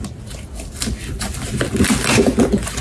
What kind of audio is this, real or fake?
real